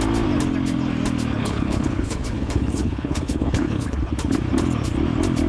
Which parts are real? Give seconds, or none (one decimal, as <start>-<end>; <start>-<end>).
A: 0.0-1.4; 4.1-5.5